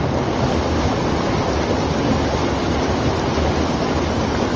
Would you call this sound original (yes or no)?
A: yes